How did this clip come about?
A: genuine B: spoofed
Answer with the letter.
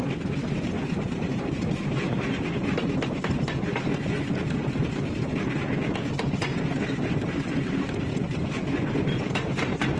A